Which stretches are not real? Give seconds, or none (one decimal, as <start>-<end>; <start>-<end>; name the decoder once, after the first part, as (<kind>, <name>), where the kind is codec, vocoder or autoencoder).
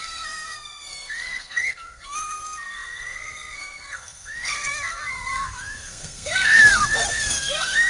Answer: 0.0-7.9 (codec, SNAC)